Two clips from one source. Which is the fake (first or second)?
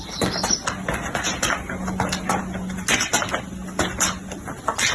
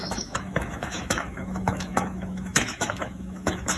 second